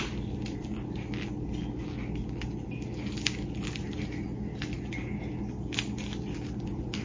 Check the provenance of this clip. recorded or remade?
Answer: recorded